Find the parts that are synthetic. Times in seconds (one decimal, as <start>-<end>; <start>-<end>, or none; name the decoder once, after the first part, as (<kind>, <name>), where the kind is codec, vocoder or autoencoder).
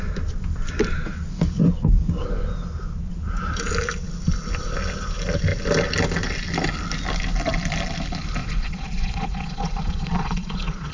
8.4-10.9 (vocoder, Vocos)